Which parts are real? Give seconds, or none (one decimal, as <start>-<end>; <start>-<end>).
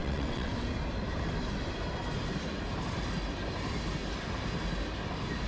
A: 0.5-5.5